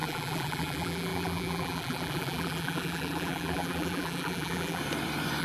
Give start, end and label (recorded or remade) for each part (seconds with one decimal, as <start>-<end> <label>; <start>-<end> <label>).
0.0-4.8 remade; 4.8-5.4 recorded